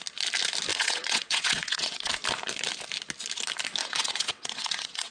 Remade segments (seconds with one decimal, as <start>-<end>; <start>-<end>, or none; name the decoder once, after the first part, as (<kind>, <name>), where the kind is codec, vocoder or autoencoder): 0.7-2.1 (vocoder, WaveNeXt); 3.8-5.1